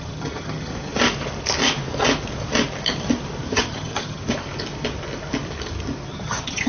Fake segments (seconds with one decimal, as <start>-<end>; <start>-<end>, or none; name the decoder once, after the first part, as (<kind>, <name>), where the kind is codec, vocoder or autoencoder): 0.0-0.7 (vocoder, HiFi-GAN); 3.5-4.2; 6.1-6.7